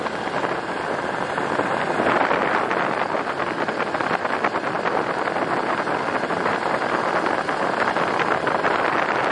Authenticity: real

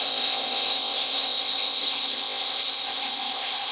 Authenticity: fake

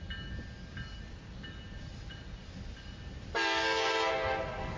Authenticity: real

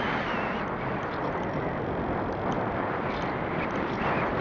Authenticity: real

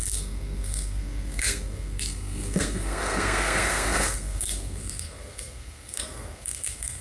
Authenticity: fake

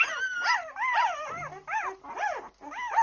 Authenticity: real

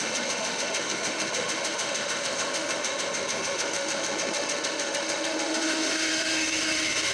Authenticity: fake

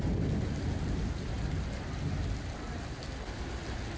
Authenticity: real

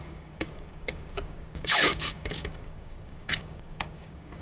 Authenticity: fake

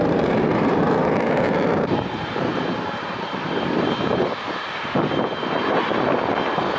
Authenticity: fake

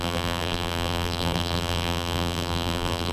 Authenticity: fake